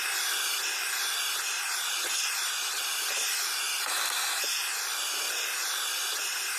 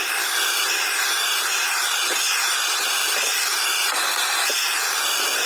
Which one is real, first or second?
first